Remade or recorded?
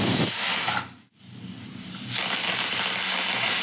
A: recorded